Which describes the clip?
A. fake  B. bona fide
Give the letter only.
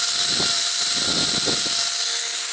B